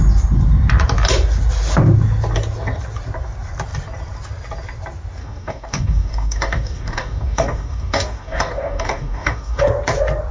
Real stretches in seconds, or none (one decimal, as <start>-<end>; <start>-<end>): 0.0-5.2; 9.6-10.3